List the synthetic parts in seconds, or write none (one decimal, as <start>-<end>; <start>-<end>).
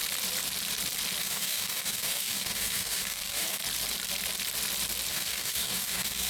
1.2-3.6; 5.1-6.3